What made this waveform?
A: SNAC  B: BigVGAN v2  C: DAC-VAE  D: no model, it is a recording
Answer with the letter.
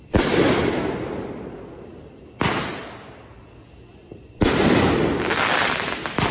D